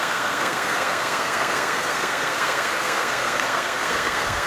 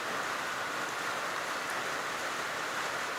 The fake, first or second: first